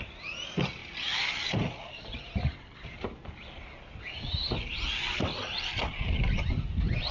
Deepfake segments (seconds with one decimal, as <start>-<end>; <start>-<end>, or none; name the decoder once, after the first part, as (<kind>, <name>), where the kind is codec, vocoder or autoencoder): 0.8-1.9 (vocoder, BigVGAN v2)